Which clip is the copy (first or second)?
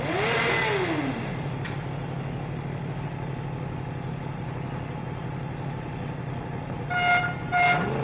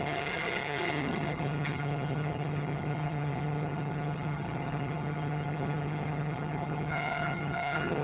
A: second